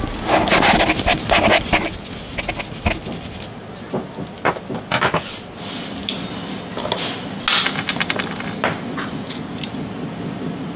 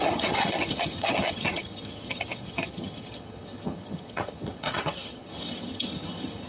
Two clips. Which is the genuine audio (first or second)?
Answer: first